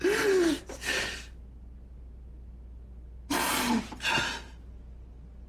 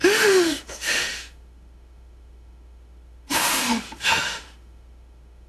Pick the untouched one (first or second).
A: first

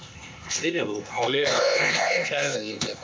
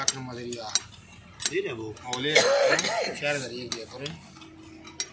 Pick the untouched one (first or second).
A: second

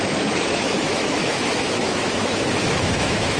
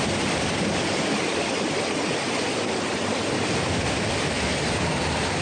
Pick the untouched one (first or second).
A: second